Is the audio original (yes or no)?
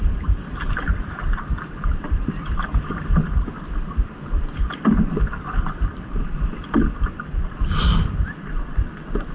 yes